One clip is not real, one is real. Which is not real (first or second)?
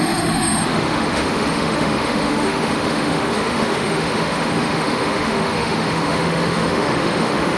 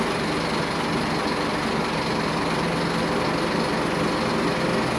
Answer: first